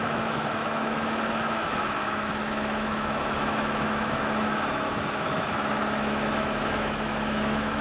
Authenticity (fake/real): fake